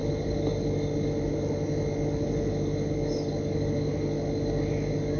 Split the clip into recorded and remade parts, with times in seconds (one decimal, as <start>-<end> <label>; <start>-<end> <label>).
0.0-5.2 recorded